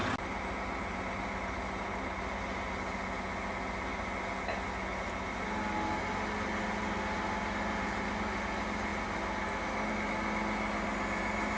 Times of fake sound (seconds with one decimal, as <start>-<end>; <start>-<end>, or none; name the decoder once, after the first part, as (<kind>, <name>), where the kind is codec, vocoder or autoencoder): none